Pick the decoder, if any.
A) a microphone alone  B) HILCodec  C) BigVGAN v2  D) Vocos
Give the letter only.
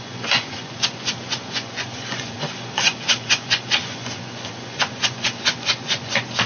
D